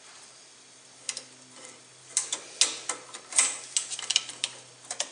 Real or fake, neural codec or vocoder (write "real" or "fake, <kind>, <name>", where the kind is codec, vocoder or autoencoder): real